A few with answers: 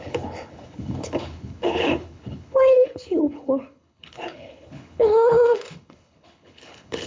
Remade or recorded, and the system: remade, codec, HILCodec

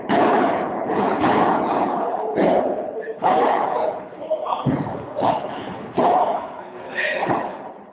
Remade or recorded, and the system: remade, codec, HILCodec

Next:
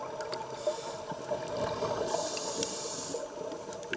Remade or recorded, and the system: recorded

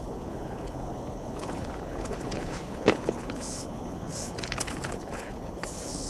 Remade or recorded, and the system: remade, codec, HILCodec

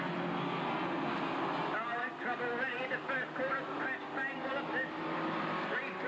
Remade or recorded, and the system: recorded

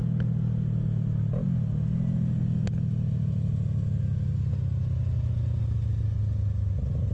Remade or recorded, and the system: recorded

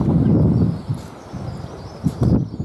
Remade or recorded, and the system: recorded